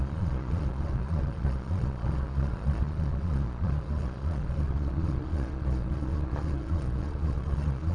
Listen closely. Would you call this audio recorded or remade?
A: remade